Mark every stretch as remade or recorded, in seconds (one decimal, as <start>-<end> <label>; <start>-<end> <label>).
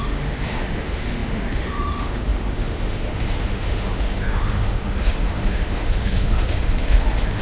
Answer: 0.0-7.4 remade